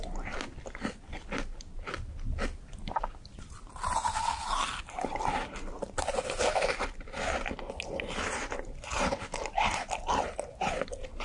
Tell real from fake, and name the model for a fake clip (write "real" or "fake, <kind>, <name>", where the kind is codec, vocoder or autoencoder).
real